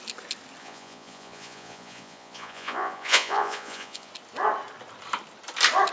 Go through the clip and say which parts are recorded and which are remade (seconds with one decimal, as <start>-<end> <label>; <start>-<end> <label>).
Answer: 0.0-0.6 recorded; 0.6-4.1 remade; 4.1-5.9 recorded